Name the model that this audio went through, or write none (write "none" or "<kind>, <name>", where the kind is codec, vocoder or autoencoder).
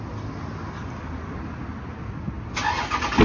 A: none